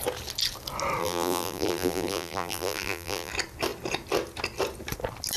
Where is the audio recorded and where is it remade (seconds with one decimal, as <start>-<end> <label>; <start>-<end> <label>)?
0.0-1.0 recorded; 1.0-3.3 remade; 3.3-5.4 recorded